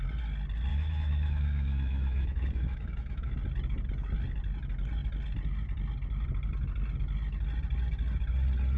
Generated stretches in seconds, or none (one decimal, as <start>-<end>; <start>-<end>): 0.7-3.3